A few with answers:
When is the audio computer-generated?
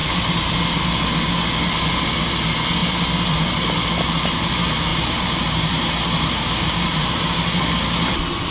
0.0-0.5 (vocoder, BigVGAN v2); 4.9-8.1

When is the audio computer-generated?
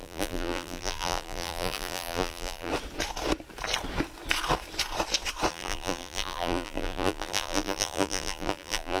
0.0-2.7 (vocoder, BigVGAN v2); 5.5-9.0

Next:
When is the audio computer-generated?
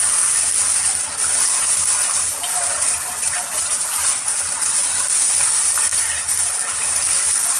5.9-6.6 (vocoder, BigVGAN v2)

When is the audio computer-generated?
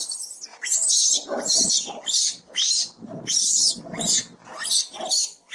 0.5-3.8 (vocoder, BigVGAN v2)